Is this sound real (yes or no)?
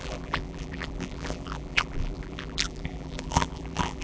no